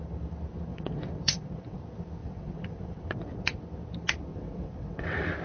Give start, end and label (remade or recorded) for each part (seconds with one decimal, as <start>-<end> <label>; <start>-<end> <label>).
0.0-0.7 recorded; 0.7-1.8 remade; 1.8-2.2 recorded; 2.2-3.6 remade; 3.6-4.3 recorded; 4.3-5.4 remade